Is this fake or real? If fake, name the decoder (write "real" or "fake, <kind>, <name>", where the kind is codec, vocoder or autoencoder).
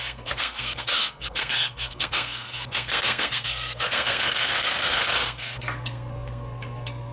fake, codec, SNAC